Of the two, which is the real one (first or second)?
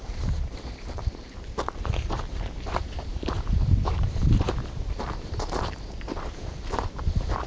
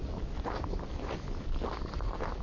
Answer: second